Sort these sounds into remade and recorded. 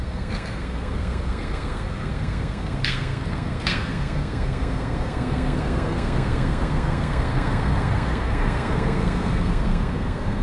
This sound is remade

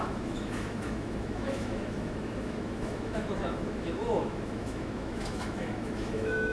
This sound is remade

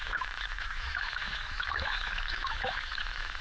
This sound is remade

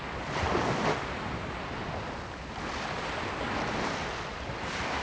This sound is recorded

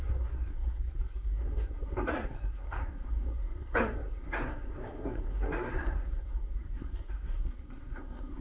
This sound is remade